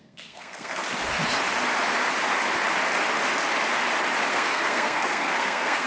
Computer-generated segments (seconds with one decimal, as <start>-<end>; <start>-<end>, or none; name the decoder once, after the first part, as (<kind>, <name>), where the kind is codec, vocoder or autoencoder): 0.0-0.8 (codec, SNAC); 4.3-5.9